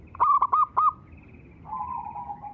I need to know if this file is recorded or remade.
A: recorded